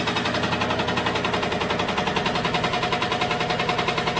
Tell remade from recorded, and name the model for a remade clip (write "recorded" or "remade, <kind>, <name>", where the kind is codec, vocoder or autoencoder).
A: recorded